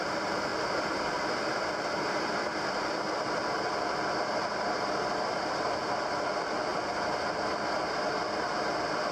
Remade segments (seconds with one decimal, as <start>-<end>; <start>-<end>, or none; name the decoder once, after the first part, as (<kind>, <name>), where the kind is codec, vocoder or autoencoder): 0.0-6.7 (vocoder, BigVGAN v2)